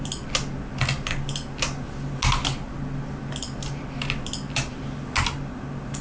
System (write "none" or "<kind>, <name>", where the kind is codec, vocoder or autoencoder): none